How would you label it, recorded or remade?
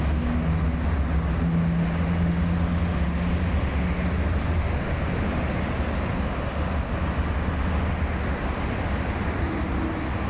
recorded